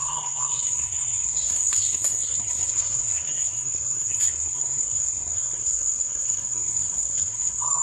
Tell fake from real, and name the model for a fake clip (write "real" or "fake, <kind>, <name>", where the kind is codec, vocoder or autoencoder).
fake, codec, SNAC